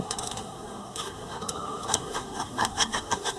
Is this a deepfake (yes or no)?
yes